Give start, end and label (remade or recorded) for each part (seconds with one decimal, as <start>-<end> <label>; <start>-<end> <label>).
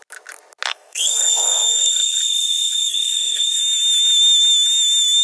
0.0-0.7 recorded; 0.7-3.6 remade; 3.6-5.2 recorded